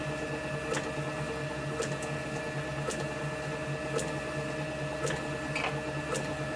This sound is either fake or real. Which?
real